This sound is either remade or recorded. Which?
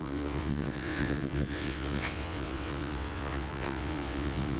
remade